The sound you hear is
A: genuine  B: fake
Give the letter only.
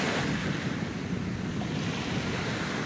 A